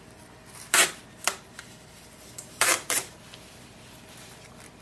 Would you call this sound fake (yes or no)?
yes